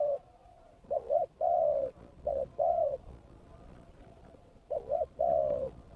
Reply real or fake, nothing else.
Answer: fake